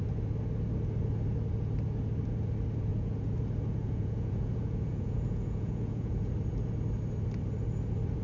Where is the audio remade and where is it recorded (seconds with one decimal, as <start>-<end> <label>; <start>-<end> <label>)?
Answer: 0.0-2.9 recorded; 2.9-3.4 remade; 3.4-3.8 recorded; 3.8-6.3 remade; 6.3-8.2 recorded